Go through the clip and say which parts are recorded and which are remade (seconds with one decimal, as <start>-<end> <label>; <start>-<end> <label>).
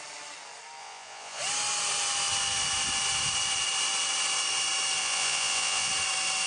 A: 0.0-0.8 recorded; 0.8-1.4 remade; 1.4-5.0 recorded; 5.0-5.9 remade; 5.9-6.5 recorded